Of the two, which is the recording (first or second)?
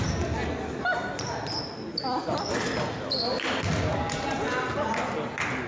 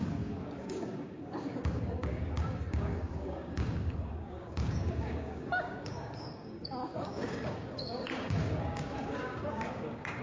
first